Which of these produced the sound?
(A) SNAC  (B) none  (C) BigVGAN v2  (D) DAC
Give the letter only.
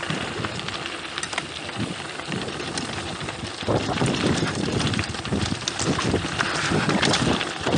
C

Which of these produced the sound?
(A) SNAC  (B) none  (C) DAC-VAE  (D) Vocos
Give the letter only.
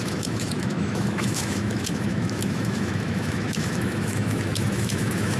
C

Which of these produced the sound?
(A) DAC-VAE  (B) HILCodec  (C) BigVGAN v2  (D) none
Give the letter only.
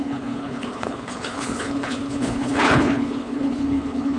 B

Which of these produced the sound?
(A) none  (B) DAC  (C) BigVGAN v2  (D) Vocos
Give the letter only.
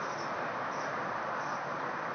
A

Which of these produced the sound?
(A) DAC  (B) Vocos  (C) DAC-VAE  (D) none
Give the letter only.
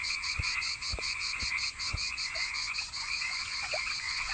B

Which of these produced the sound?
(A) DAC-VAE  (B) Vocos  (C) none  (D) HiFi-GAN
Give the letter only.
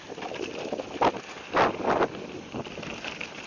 C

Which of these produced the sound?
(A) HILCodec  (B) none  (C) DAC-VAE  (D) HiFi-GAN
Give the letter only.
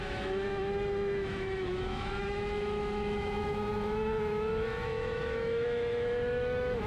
C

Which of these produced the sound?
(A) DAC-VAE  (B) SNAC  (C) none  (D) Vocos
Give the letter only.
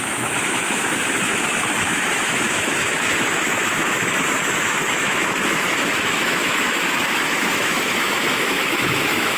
A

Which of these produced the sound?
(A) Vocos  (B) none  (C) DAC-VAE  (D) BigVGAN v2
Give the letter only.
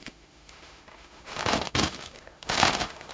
C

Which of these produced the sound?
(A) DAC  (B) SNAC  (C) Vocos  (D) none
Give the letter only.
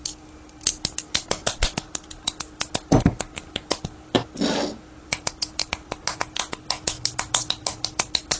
D